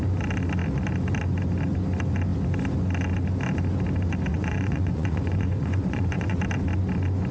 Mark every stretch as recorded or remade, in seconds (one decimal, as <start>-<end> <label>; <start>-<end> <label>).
0.0-4.3 recorded; 4.3-6.4 remade; 6.4-7.3 recorded